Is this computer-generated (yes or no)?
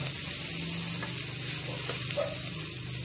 no